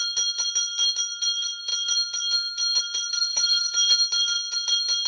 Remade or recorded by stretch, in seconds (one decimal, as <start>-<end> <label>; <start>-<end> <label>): 0.0-3.2 recorded; 3.2-3.9 remade; 3.9-5.1 recorded